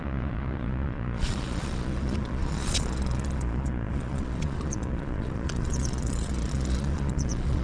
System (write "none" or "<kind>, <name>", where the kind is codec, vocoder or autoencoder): vocoder, Vocos